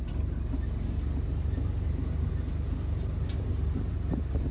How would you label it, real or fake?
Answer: real